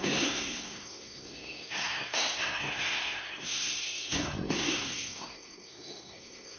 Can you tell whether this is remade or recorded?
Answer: remade